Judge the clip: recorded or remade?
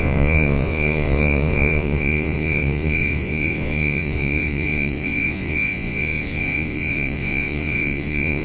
remade